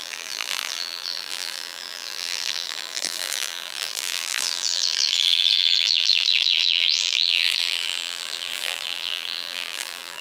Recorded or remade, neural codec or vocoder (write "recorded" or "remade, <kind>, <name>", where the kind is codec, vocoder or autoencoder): remade, vocoder, BigVGAN v2